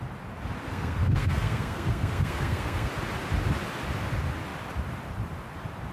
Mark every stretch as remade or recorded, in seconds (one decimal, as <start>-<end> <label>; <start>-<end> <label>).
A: 0.0-0.7 recorded; 0.7-2.9 remade; 2.9-5.9 recorded